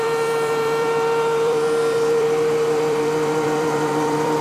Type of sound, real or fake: fake